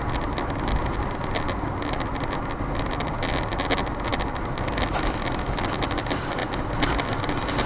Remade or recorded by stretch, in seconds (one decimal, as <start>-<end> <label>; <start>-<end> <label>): 0.0-7.7 recorded